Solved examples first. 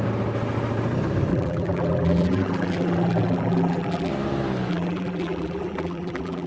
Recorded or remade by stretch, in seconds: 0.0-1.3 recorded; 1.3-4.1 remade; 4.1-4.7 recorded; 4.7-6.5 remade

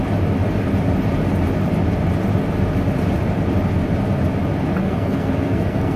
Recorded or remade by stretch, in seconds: 0.0-4.8 recorded; 4.8-6.0 remade

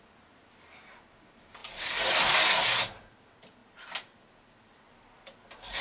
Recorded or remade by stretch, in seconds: 0.0-5.8 recorded

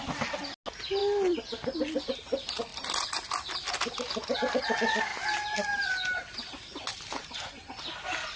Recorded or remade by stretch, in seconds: 0.0-8.4 recorded

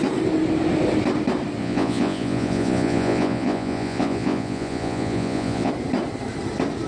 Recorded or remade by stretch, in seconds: 0.0-1.6 recorded; 1.6-5.7 remade; 5.7-6.9 recorded

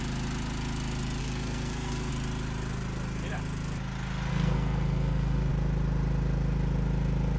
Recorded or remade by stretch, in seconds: 0.0-1.2 recorded; 1.2-2.1 remade; 2.1-4.3 recorded; 4.3-5.5 remade; 5.5-7.4 recorded

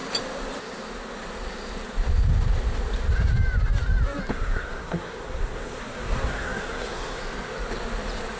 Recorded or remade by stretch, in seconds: 0.0-4.3 recorded; 4.3-7.2 remade; 7.2-8.4 recorded